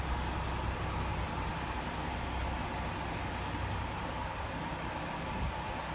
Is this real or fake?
real